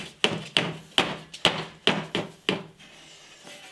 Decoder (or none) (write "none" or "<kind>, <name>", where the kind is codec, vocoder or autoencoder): none